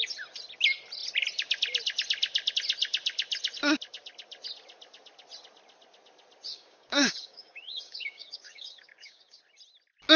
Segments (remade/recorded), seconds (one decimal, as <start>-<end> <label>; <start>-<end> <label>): 0.0-6.5 recorded; 6.5-9.4 remade; 9.4-10.2 recorded